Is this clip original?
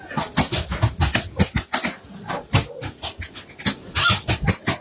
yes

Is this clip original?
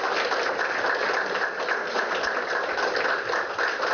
yes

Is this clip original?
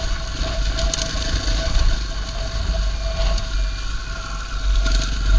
yes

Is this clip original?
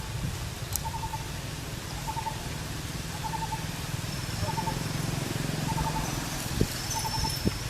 no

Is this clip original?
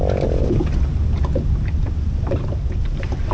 yes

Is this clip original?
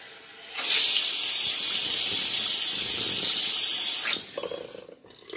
yes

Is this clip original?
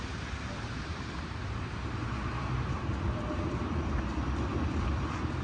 no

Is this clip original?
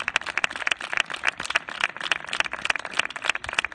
yes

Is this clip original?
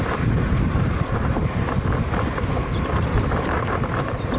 no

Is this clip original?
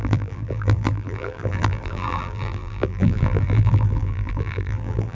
no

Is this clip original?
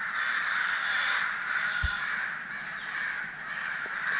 yes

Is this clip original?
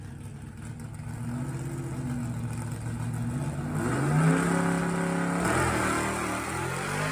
yes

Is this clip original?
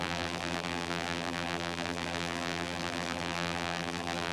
no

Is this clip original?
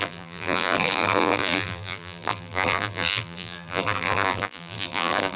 no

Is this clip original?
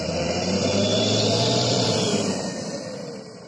no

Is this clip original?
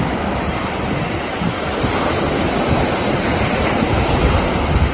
no